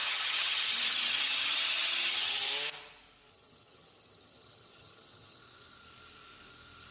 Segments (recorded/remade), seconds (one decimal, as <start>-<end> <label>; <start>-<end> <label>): 0.0-2.5 remade; 2.5-3.3 recorded; 3.3-5.4 remade; 5.4-6.9 recorded